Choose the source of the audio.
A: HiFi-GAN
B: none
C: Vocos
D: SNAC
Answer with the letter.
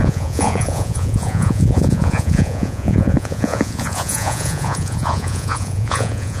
C